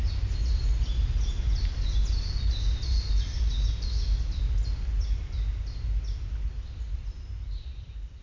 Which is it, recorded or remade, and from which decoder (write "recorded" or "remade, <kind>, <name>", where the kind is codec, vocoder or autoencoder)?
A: recorded